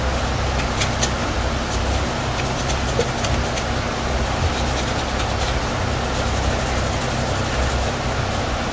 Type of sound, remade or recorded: recorded